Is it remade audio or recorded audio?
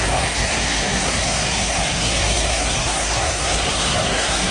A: remade